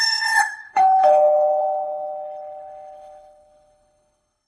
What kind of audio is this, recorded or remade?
remade